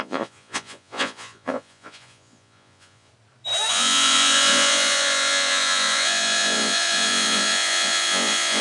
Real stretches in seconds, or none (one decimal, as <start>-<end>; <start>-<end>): 3.1-3.7